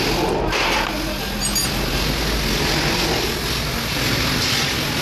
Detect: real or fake real